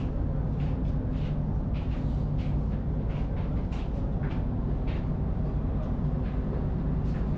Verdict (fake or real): real